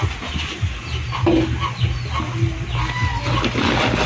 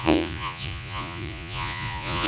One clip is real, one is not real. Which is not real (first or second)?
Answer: second